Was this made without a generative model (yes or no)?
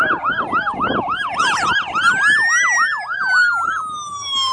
yes